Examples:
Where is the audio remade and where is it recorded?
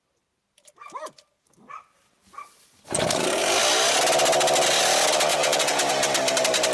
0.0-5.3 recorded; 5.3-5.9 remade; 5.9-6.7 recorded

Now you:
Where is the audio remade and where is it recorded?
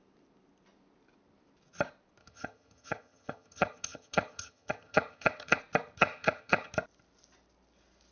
0.0-2.2 recorded; 2.2-5.6 remade; 5.6-6.0 recorded; 6.0-6.7 remade; 6.7-8.1 recorded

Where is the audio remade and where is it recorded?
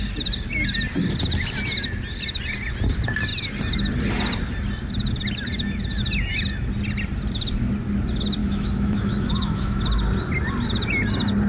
0.0-8.4 recorded; 8.4-9.8 remade; 9.8-11.5 recorded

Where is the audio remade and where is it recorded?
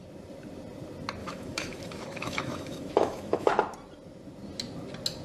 0.0-1.2 recorded; 1.2-3.5 remade; 3.5-5.2 recorded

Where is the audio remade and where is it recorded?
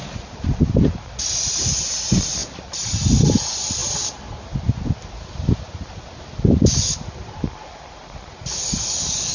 0.0-0.6 remade; 0.6-9.3 recorded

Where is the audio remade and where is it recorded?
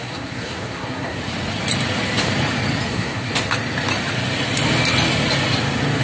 0.0-1.2 remade; 1.2-2.9 recorded; 2.9-3.3 remade; 3.3-6.0 recorded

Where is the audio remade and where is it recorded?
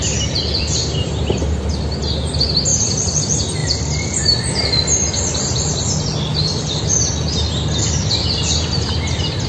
0.0-2.7 recorded; 2.7-3.2 remade; 3.2-3.6 recorded; 3.6-6.8 remade; 6.8-9.5 recorded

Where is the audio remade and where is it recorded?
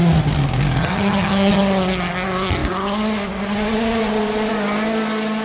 0.0-0.8 recorded; 0.8-1.6 remade; 1.6-5.4 recorded